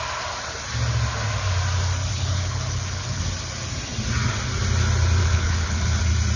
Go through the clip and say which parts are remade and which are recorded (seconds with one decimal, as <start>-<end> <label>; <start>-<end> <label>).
0.0-2.1 recorded; 2.1-3.2 remade; 3.2-5.2 recorded; 5.2-6.0 remade; 6.0-6.4 recorded